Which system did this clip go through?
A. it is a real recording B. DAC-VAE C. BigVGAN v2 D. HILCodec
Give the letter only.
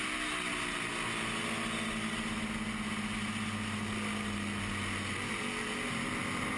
A